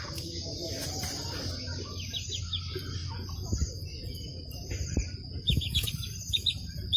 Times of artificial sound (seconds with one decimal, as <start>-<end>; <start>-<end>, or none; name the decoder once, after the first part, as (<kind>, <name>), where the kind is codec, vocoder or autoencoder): 0.0-0.6 (vocoder, BigVGAN v2); 2.4-3.0; 3.5-7.0